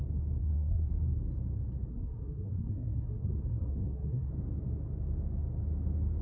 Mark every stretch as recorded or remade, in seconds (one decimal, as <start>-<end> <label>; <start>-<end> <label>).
0.0-0.4 recorded; 0.4-0.9 remade; 0.9-1.9 recorded; 1.9-4.3 remade; 4.3-6.2 recorded